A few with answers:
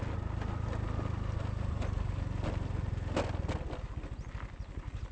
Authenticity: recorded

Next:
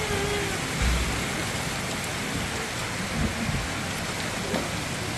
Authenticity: recorded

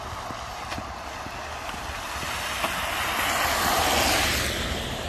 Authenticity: recorded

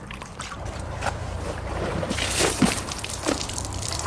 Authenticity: remade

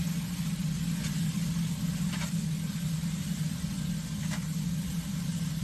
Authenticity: recorded